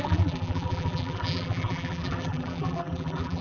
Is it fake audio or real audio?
fake